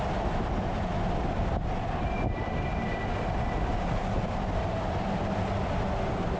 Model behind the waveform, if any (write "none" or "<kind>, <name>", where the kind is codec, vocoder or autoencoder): none